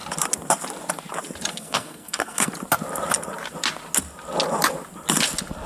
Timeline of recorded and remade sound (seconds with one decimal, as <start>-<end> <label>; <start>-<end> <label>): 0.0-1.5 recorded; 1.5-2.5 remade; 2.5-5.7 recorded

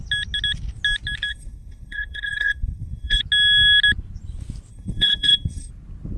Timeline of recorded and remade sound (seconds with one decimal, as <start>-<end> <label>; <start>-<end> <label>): 0.0-1.3 recorded; 1.3-3.2 remade; 3.2-4.7 recorded; 4.7-5.7 remade; 5.7-6.2 recorded

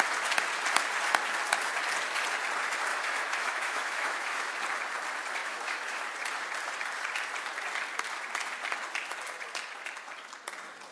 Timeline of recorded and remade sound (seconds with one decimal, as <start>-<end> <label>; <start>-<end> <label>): 0.0-2.9 recorded; 2.9-4.5 remade; 4.5-5.4 recorded; 5.4-6.0 remade; 6.0-10.9 recorded

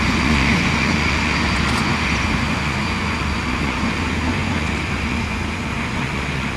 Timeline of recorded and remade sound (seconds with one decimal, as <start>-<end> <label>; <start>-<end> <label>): 0.0-6.6 remade

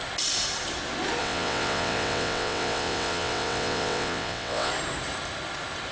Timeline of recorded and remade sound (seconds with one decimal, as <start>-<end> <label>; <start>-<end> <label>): 0.0-1.2 recorded; 1.2-4.7 remade; 4.7-5.9 recorded